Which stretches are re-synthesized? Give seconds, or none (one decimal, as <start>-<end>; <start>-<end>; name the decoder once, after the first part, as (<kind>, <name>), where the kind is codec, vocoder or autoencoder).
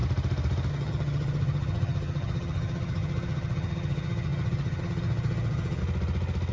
0.7-5.8 (vocoder, HiFi-GAN)